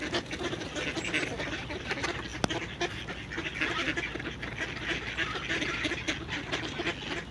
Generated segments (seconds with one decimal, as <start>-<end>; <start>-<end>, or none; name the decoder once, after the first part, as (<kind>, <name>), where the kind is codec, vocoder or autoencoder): none